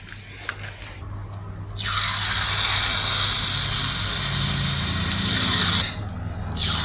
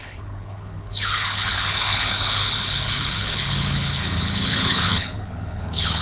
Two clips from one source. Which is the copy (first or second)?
second